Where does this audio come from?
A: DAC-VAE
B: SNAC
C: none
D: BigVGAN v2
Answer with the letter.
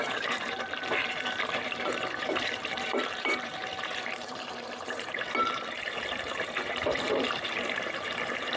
D